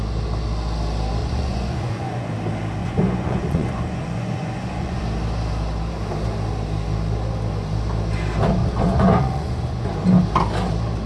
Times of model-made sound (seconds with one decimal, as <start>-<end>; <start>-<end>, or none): 1.2-2.3; 2.8-5.0; 8.6-9.9